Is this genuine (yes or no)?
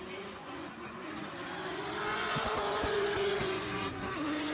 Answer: no